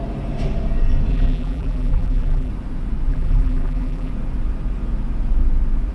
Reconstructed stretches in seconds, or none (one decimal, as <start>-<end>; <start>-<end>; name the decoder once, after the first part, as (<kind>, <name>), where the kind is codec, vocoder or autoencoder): 1.1-2.5 (vocoder, BigVGAN v2); 3.1-4.1